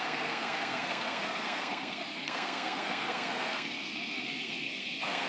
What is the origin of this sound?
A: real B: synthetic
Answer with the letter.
B